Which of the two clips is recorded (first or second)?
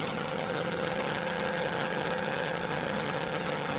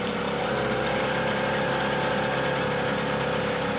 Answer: second